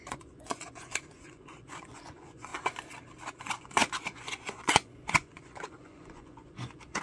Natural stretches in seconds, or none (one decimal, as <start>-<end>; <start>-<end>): 2.5-3.4